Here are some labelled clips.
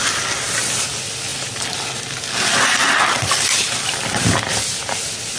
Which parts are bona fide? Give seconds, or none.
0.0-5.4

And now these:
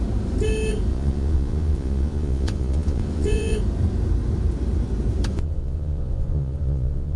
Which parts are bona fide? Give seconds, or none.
0.0-0.9; 3.6-5.3

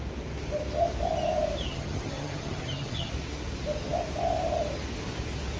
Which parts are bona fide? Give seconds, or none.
0.0-1.7; 3.1-5.6